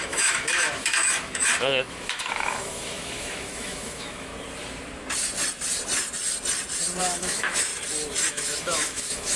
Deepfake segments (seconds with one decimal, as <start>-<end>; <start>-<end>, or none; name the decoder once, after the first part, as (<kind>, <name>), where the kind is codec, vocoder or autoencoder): 0.0-4.3 (autoencoder, DAC-VAE); 7.0-7.7; 8.3-9.4